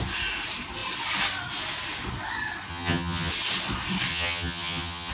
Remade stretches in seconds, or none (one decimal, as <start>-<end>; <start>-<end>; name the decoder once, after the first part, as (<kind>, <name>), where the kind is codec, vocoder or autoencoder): 2.7-3.3 (vocoder, HiFi-GAN); 4.1-5.1